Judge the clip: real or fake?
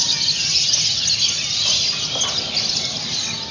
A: real